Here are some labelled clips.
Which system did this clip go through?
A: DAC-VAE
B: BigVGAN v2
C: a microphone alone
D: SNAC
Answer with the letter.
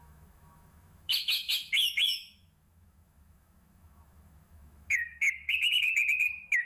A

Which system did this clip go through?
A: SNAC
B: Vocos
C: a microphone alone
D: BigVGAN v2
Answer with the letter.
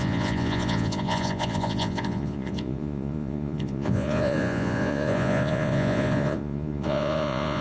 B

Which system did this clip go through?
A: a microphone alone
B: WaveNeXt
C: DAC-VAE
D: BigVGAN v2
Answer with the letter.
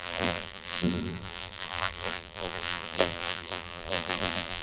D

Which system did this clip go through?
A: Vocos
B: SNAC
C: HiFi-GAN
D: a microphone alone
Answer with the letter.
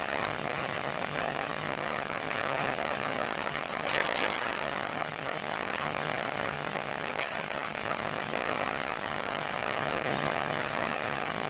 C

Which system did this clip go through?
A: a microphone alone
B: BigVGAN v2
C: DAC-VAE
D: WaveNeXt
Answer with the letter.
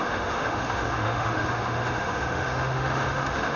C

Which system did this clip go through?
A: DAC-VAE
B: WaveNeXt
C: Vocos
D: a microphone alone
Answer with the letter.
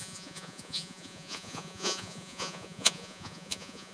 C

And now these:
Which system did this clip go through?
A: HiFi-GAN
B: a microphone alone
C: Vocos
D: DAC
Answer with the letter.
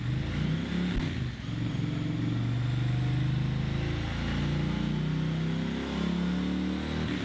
B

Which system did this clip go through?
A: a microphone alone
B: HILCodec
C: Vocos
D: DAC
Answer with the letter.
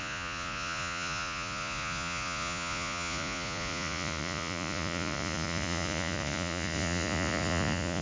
C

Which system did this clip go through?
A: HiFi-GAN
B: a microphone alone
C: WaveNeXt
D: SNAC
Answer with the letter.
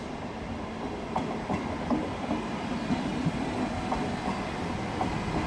B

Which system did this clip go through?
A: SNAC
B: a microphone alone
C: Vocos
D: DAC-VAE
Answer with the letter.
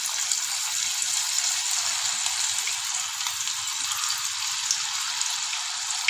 B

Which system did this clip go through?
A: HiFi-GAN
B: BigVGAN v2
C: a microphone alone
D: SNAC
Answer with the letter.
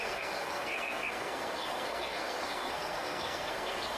D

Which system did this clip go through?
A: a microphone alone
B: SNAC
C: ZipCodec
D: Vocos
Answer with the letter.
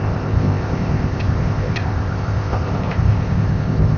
C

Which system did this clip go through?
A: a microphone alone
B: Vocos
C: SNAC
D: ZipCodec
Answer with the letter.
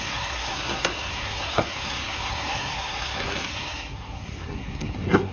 C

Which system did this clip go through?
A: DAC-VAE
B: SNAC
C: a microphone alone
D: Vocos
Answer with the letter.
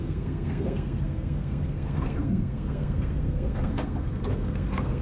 B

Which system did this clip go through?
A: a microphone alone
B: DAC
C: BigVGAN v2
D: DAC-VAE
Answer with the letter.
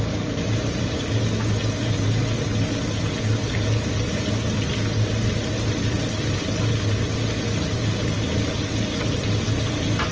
A